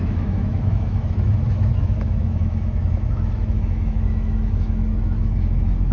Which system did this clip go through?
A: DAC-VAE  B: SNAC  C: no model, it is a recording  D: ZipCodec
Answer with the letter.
A